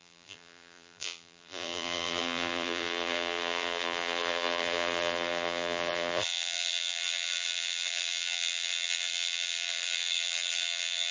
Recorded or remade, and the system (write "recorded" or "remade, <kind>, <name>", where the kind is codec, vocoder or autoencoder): remade, vocoder, BigVGAN v2